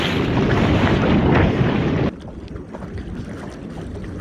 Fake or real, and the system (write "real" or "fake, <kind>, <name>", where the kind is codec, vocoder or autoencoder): real